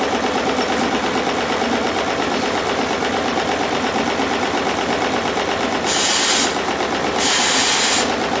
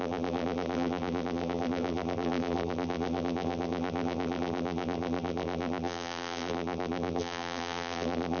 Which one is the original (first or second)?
first